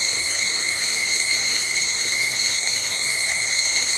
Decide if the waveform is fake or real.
fake